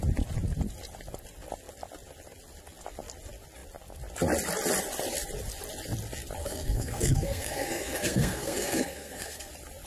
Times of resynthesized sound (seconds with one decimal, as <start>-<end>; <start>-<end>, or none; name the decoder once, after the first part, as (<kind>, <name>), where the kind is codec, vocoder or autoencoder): 6.4-9.5 (codec, SNAC)